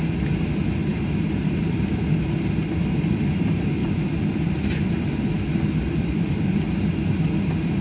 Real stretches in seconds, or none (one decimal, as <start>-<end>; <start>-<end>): 0.0-0.9; 1.6-2.8; 3.3-3.8; 6.7-7.8